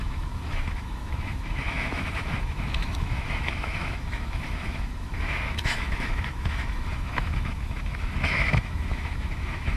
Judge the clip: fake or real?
fake